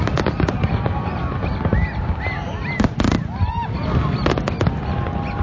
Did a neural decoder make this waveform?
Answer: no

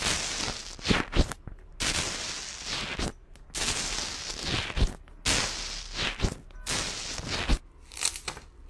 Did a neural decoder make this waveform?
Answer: no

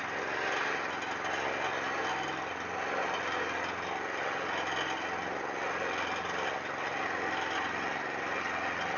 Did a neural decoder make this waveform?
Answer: no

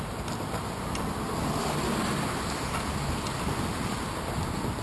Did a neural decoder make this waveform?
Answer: no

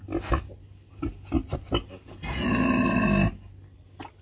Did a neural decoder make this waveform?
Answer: no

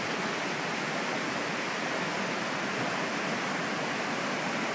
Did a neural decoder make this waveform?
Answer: no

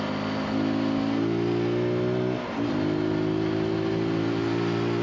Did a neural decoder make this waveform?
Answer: no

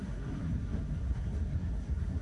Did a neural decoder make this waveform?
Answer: yes